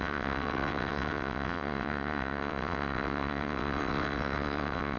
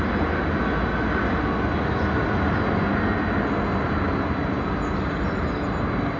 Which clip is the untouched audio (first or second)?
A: second